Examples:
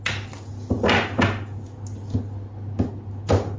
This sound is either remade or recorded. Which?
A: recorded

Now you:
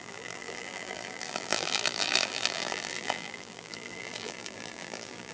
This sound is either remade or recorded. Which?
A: remade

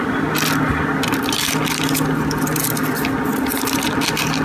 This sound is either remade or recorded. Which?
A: recorded